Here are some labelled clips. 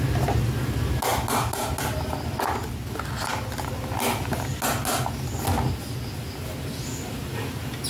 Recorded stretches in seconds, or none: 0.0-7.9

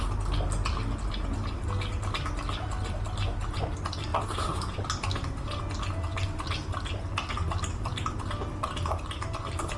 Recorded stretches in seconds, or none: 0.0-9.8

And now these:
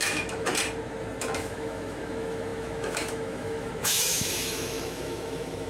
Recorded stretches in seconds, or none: 0.5-1.2

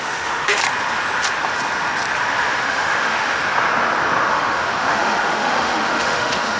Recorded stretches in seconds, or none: 0.6-2.6; 3.4-4.3